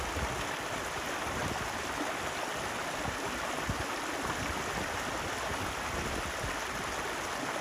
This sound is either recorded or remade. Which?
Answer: recorded